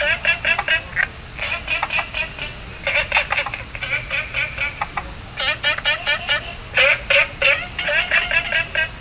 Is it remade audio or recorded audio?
recorded